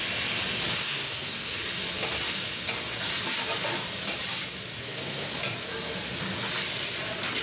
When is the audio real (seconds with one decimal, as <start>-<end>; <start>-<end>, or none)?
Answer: 0.0-0.8; 1.6-4.8; 5.4-7.4